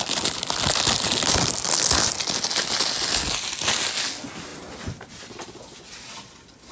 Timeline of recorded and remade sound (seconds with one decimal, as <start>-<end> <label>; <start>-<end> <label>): 0.0-6.7 recorded

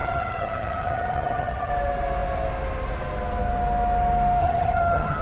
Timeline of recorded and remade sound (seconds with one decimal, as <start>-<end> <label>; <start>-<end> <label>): 0.0-1.7 remade; 1.7-4.4 recorded; 4.4-5.2 remade

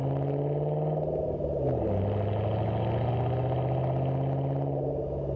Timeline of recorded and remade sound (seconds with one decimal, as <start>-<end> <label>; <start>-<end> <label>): 0.0-5.4 recorded